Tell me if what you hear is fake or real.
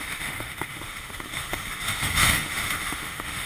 fake